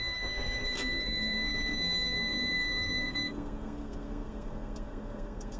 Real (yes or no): no